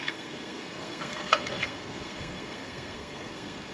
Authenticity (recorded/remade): remade